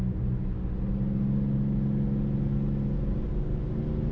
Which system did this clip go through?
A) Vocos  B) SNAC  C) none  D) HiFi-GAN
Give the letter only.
C